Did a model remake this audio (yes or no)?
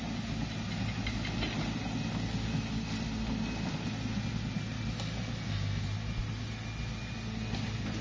no